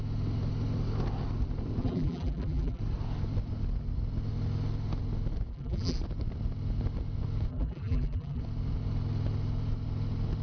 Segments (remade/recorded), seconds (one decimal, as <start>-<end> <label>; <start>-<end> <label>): 0.0-1.8 recorded; 1.8-2.8 remade; 2.8-5.5 recorded; 5.5-6.0 remade; 6.0-7.5 recorded; 7.5-8.4 remade; 8.4-10.4 recorded